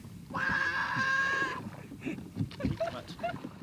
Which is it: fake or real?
real